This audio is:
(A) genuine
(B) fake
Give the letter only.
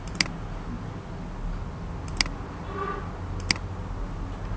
A